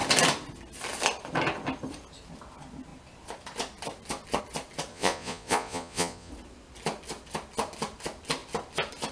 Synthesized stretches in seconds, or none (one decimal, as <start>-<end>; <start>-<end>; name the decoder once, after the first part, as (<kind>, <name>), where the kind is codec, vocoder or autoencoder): 4.9-6.3 (vocoder, Vocos)